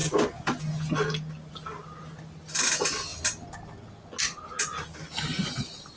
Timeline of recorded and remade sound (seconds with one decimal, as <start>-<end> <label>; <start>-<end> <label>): 0.0-6.0 recorded